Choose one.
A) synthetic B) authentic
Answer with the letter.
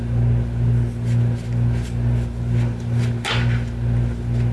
B